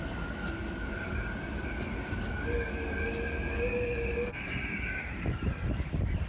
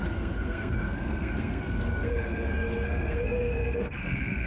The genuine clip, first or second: first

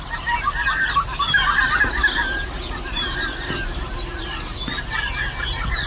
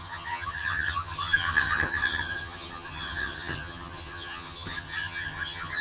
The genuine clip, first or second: first